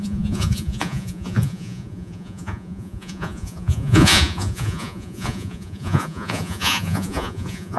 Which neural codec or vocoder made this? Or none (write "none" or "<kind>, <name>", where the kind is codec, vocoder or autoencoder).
vocoder, Vocos